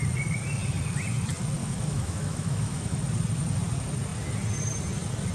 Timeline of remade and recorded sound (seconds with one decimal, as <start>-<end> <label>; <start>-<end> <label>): 0.0-1.6 recorded; 1.6-3.0 remade; 3.0-5.3 recorded